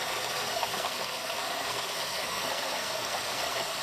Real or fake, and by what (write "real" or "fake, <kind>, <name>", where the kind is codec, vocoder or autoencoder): fake, codec, SNAC